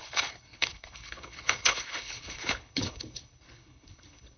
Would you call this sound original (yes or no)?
no